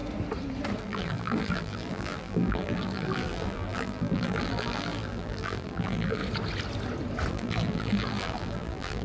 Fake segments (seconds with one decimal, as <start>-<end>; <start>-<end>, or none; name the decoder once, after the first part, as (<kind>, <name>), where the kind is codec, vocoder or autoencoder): 0.8-6.2 (vocoder, BigVGAN v2); 7.3-9.0